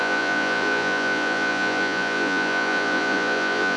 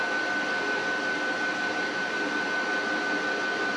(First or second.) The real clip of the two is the second